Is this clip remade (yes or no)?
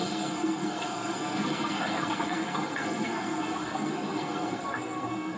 yes